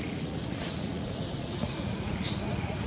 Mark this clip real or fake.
fake